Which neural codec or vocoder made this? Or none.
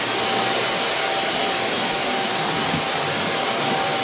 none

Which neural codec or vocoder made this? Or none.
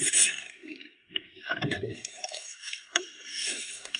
codec, SNAC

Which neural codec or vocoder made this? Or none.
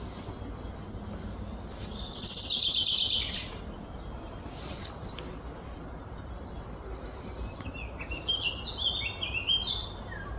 none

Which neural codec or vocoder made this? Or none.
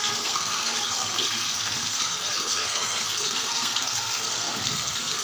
codec, SNAC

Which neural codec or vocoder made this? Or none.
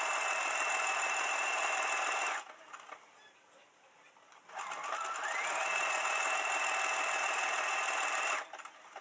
none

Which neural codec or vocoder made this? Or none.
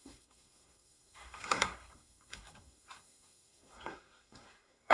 codec, SNAC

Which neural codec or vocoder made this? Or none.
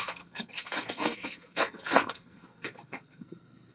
codec, SNAC